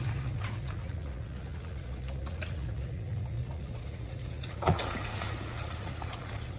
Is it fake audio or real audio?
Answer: fake